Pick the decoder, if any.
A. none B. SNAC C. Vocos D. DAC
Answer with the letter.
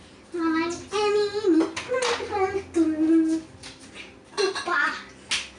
A